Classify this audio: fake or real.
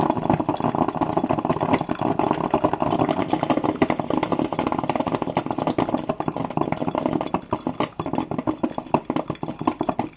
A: fake